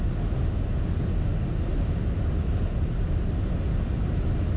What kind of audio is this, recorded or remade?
recorded